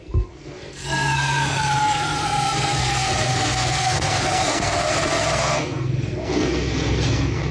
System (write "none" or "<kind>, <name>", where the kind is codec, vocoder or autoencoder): codec, SNAC